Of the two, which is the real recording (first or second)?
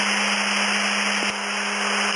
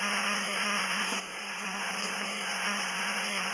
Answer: first